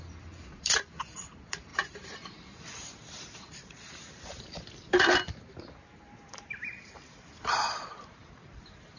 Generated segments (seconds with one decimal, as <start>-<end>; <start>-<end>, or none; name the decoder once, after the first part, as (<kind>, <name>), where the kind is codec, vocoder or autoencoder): 1.7-4.4 (vocoder, BigVGAN v2); 6.7-9.0